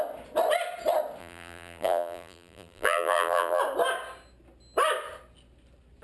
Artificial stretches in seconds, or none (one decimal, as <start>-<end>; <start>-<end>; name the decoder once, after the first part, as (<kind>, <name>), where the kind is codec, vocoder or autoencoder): 1.2-3.6 (vocoder, BigVGAN v2)